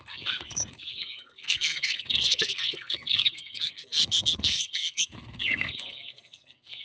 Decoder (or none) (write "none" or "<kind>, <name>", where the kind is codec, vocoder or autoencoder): codec, SNAC